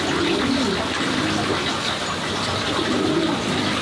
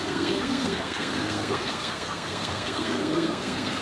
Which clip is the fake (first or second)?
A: second